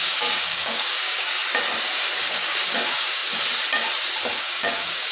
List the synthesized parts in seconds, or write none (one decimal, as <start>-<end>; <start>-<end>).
0.0-1.4; 2.2-3.2; 4.4-5.1